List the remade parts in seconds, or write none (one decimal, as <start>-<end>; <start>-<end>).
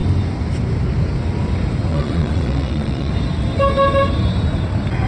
1.9-3.1